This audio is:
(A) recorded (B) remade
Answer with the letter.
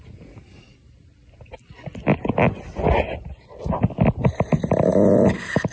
A